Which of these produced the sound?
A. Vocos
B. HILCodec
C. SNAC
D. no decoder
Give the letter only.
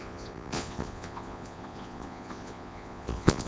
A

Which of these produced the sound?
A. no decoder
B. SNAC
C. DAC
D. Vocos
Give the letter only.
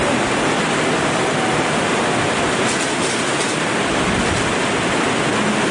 A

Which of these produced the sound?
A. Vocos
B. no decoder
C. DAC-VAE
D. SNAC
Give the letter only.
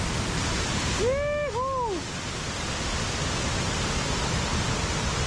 B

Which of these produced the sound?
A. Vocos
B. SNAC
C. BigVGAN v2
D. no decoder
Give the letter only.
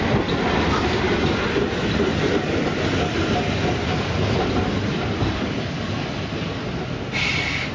D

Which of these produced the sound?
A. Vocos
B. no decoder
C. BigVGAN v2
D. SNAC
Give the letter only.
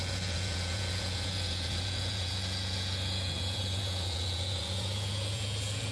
A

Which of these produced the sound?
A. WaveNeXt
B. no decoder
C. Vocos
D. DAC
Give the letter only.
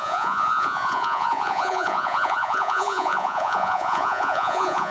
C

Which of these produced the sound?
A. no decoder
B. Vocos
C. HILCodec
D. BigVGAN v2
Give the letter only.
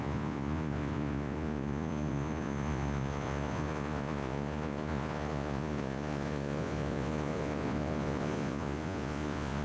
B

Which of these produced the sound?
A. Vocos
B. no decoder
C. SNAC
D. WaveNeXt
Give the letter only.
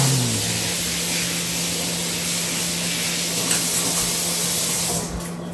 B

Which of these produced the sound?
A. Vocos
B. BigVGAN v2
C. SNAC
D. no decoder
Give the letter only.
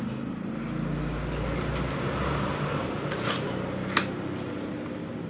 D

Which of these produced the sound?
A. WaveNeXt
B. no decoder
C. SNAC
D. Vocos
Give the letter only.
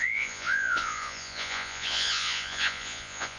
D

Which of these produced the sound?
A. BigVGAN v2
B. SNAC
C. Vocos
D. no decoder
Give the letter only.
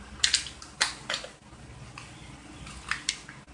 D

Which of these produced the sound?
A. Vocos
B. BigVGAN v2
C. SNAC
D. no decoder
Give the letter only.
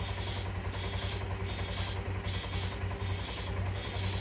D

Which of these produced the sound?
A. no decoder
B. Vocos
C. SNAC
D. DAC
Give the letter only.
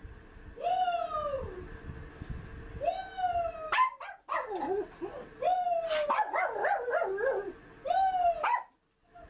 A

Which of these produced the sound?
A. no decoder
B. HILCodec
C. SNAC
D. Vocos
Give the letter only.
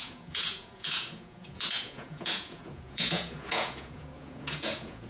D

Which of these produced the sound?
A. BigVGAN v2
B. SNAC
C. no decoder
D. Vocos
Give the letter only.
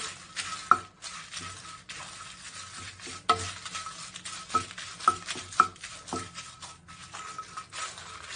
C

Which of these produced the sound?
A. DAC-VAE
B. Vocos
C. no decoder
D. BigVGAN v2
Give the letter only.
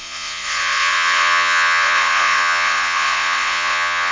B